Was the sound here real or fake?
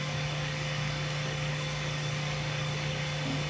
fake